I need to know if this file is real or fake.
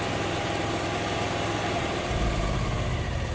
fake